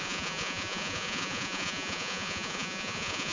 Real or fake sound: fake